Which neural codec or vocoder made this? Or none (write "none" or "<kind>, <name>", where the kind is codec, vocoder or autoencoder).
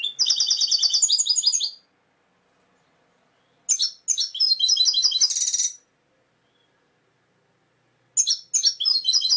none